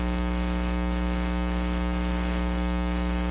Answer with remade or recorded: recorded